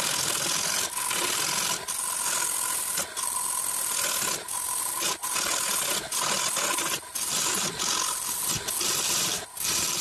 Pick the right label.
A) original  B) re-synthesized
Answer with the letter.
A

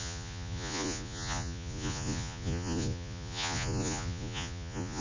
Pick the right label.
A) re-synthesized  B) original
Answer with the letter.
A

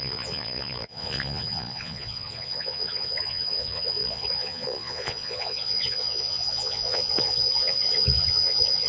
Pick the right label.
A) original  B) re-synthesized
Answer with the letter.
B